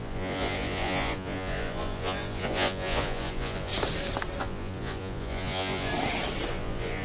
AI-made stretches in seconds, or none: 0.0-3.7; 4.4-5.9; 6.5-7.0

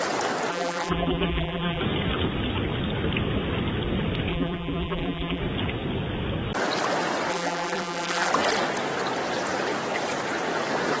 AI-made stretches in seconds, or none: 0.5-1.8; 4.3-5.4; 7.3-8.3